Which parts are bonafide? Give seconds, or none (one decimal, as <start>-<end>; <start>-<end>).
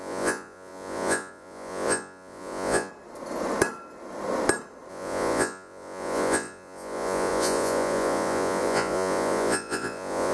2.9-4.9